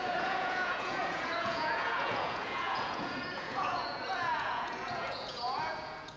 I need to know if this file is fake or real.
fake